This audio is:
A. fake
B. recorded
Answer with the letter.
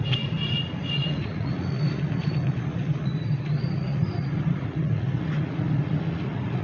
A